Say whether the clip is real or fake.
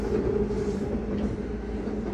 real